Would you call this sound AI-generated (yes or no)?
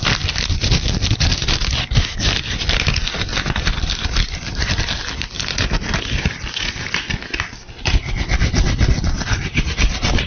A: no